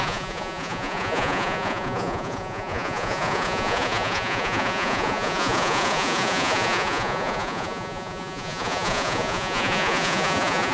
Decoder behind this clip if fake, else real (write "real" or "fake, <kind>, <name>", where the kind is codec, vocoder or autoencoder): fake, vocoder, Vocos